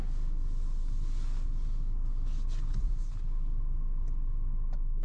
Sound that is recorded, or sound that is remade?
recorded